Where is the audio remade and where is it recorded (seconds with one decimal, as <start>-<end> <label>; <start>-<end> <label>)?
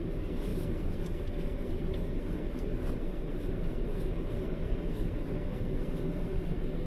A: 0.0-6.9 remade